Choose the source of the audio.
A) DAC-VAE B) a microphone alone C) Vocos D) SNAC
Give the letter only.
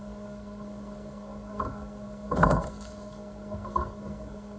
D